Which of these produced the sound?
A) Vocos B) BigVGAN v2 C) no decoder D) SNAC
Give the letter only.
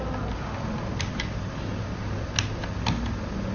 C